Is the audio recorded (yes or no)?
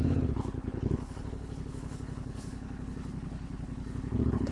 no